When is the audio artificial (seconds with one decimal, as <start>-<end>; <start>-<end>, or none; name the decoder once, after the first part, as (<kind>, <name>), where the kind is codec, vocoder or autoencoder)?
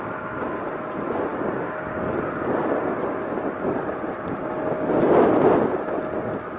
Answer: none